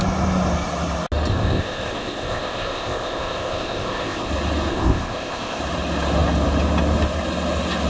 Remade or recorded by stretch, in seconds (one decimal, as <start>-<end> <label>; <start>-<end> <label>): 0.0-1.3 recorded; 1.3-4.3 remade; 4.3-4.7 recorded; 4.7-5.6 remade; 5.6-7.9 recorded